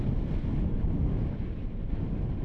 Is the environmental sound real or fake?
real